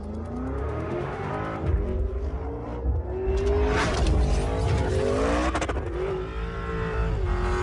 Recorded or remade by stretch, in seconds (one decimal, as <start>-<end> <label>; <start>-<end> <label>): 0.0-0.6 recorded; 0.6-1.3 remade; 1.3-7.6 recorded